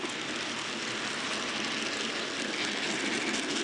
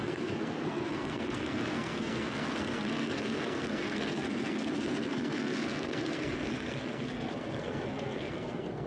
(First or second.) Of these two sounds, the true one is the first